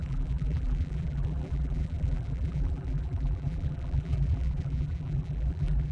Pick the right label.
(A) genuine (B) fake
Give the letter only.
B